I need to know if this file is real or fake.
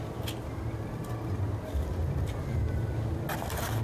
real